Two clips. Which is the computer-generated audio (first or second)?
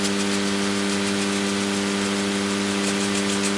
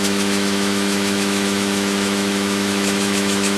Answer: second